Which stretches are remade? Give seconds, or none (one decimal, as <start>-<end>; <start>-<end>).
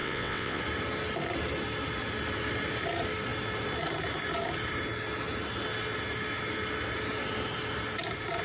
0.0-0.6